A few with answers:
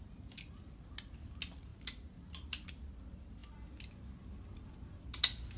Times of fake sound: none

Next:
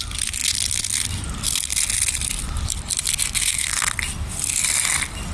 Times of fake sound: 3.2-3.8 (autoencoder, DAC-VAE)

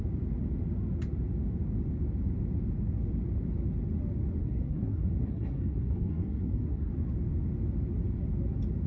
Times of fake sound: 4.4-6.9 (codec, SNAC)